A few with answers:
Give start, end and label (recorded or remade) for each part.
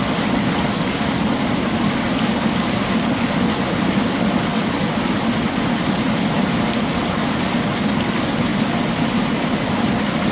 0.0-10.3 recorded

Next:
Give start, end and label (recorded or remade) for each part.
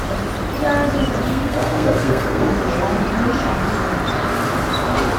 0.0-1.3 recorded; 1.3-2.5 remade; 2.5-5.2 recorded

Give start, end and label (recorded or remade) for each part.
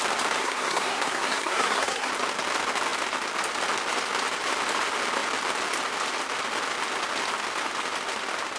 0.0-0.4 recorded; 0.4-2.1 remade; 2.1-8.6 recorded